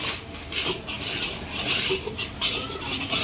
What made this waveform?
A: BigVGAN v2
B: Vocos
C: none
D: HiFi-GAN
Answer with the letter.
C